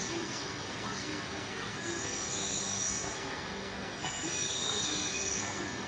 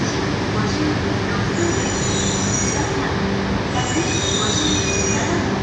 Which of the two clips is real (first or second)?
second